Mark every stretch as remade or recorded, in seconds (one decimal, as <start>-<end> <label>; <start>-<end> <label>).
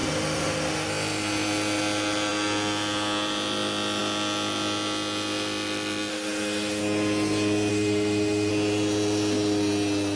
0.0-0.9 remade; 0.9-6.1 recorded; 6.1-6.8 remade; 6.8-7.7 recorded; 7.7-8.5 remade; 8.5-10.2 recorded